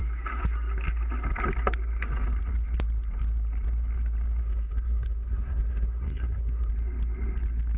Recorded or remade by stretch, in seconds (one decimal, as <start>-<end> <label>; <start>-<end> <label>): 0.0-4.4 recorded; 4.4-6.7 remade; 6.7-7.8 recorded